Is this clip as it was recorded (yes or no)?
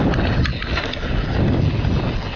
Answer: yes